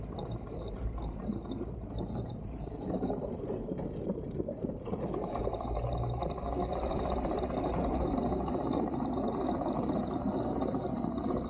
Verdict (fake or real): fake